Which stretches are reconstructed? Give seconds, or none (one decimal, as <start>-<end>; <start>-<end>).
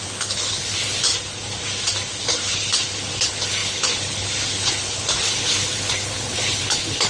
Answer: 0.0-1.1; 2.2-7.1